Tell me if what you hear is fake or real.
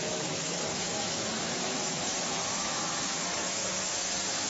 fake